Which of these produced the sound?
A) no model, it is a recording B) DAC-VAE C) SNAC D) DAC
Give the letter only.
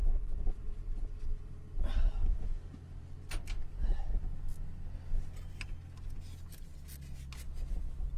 A